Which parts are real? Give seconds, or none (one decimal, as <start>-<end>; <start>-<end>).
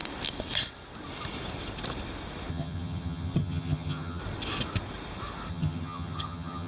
0.0-2.5; 4.2-5.5